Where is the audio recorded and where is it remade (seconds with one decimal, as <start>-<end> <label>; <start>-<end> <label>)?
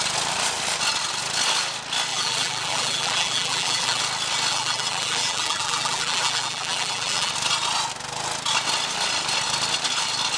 0.0-2.1 recorded; 2.1-4.0 remade; 4.0-4.5 recorded; 4.5-7.3 remade; 7.3-10.4 recorded